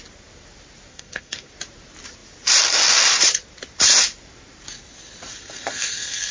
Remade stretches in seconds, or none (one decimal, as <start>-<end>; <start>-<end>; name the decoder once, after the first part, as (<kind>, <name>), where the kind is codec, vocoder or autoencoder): 0.9-1.5 (codec, SNAC); 5.3-6.3